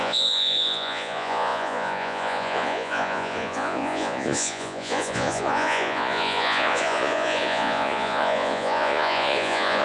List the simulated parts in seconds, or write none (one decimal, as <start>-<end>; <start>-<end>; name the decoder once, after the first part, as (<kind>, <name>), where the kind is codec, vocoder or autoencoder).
0.0-9.8 (vocoder, Vocos)